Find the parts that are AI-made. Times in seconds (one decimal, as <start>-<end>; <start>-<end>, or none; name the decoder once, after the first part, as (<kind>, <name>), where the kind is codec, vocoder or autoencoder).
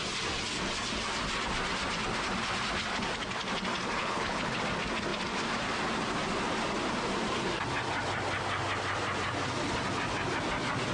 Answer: 4.0-4.6 (codec, HILCodec)